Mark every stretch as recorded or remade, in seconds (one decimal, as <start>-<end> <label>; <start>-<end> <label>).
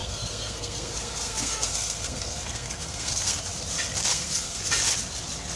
0.0-3.4 remade; 3.4-4.1 recorded; 4.1-4.6 remade; 4.6-5.6 recorded